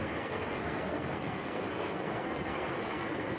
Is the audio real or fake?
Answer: fake